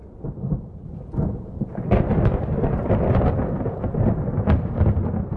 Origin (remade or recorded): recorded